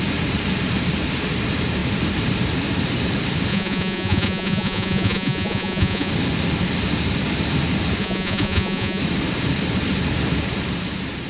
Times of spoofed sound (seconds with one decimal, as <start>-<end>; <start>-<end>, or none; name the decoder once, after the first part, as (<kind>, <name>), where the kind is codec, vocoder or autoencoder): 3.5-6.1 (vocoder, Vocos); 8.0-9.0

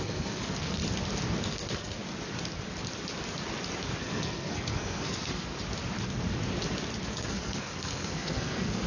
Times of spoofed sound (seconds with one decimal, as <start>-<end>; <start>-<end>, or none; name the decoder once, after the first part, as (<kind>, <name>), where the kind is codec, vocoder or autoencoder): 0.0-0.8 (codec, SNAC); 1.5-2.0; 4.0-5.5; 7.1-8.9

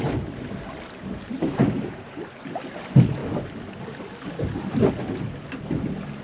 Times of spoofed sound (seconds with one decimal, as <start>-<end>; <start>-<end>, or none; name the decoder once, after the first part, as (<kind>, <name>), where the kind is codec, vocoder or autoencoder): none

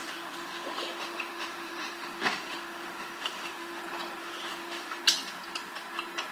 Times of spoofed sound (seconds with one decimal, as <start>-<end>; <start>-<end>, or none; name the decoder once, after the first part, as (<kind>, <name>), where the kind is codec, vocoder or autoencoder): 0.0-3.8 (autoencoder, DAC-VAE); 4.2-5.0